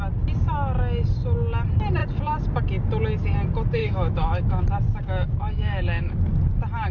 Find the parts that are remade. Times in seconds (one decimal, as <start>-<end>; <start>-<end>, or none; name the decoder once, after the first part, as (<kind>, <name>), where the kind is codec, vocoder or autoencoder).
3.8-4.6 (autoencoder, DAC-VAE); 5.4-6.3